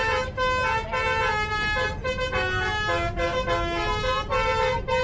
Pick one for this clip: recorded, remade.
recorded